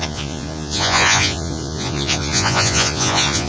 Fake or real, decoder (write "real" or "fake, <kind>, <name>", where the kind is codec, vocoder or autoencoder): fake, vocoder, Vocos